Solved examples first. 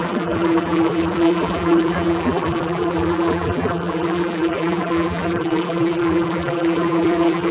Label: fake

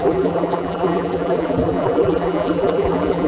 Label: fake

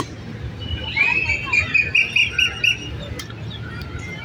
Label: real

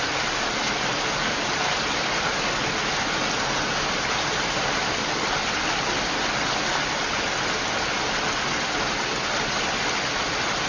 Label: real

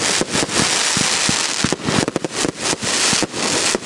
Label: real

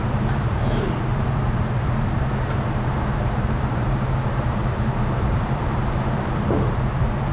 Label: fake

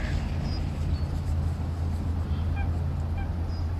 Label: real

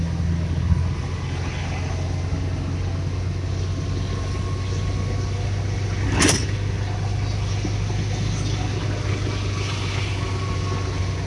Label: real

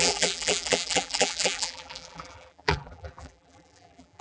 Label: fake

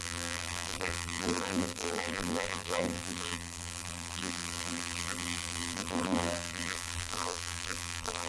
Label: fake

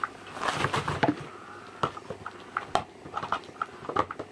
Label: real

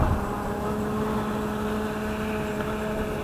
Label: real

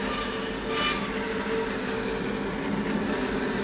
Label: real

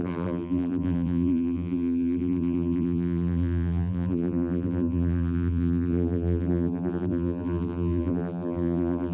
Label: fake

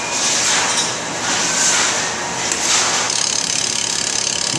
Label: real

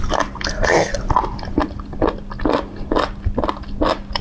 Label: real